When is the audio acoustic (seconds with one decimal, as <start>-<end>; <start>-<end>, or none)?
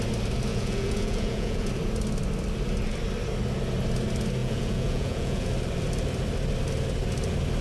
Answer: 0.0-0.5; 1.7-4.4; 5.5-7.6